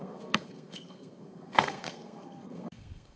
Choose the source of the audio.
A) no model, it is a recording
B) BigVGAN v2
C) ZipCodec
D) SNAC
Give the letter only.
D